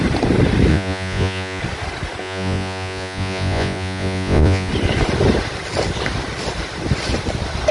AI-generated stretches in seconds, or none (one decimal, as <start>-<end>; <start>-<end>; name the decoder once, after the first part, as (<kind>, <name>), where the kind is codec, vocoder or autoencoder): 0.7-1.6 (vocoder, Vocos); 2.2-4.7